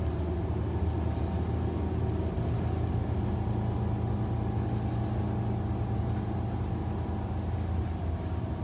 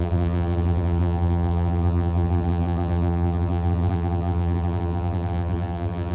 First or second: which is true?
first